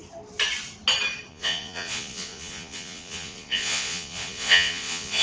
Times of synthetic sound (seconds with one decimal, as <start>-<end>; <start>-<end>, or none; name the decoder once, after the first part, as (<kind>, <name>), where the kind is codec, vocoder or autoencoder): 1.3-5.2 (vocoder, Vocos)